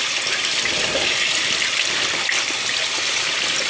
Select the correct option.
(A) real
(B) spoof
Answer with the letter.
A